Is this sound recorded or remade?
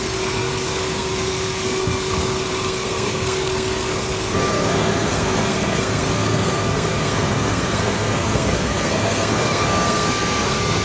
remade